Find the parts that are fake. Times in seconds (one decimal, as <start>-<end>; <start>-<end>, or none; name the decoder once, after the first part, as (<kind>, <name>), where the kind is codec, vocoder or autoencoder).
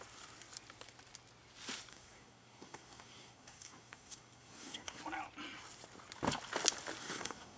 1.9-5.0 (codec, SNAC); 7.0-7.6